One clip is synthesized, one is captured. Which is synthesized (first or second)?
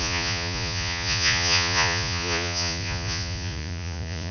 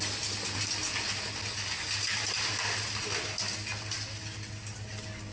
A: first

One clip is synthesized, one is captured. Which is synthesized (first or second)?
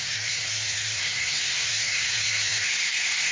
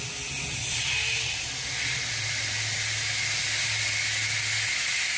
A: first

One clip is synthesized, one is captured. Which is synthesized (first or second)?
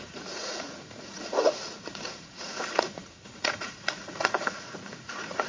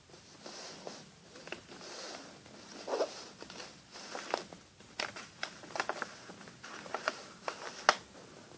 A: first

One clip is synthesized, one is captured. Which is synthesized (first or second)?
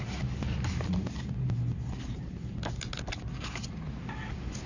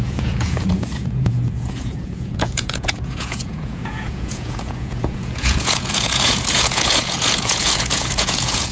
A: second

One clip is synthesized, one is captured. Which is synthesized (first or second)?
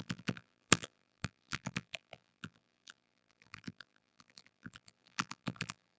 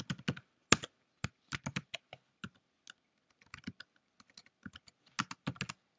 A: first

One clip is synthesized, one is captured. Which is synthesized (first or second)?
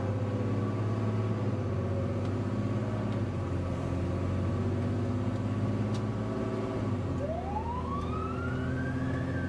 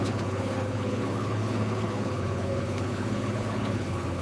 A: second